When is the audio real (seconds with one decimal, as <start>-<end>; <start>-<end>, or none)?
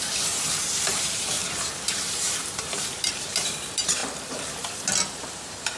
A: 4.0-5.1